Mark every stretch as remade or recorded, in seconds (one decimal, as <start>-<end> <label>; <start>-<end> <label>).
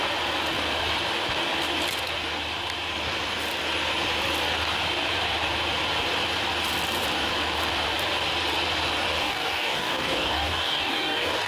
0.0-9.2 recorded; 9.2-11.5 remade